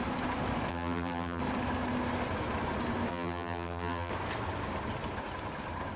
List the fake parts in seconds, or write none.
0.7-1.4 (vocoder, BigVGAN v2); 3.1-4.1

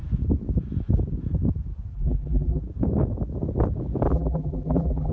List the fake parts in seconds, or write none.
1.9-2.6 (vocoder, BigVGAN v2); 4.1-5.1

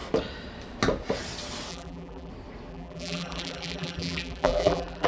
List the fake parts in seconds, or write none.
1.7-2.3 (vocoder, BigVGAN v2); 2.7-5.1

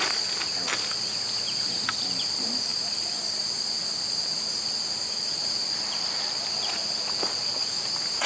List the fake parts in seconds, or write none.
none

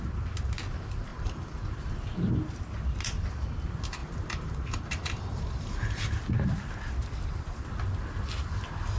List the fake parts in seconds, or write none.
1.1-1.6 (vocoder, BigVGAN v2); 4.0-6.2

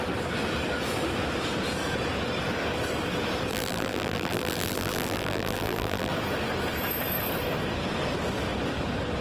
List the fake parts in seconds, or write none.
3.5-6.1 (vocoder, BigVGAN v2)

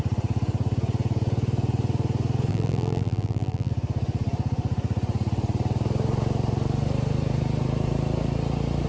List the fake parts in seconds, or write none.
2.5-3.7 (vocoder, BigVGAN v2)